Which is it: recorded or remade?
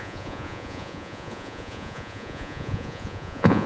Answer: remade